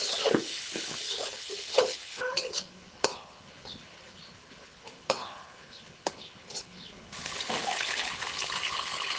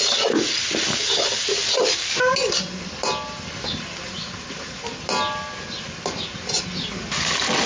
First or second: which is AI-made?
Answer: first